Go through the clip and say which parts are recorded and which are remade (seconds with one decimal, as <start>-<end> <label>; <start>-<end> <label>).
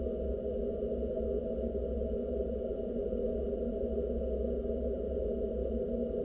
0.0-6.2 recorded